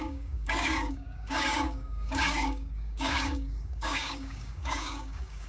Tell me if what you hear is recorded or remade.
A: remade